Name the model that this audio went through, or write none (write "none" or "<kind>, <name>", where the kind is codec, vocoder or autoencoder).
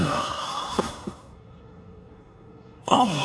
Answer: codec, SNAC